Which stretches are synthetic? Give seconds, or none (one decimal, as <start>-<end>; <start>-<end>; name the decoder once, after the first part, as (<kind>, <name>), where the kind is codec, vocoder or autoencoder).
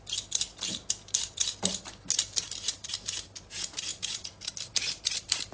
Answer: 3.9-4.5 (vocoder, Vocos)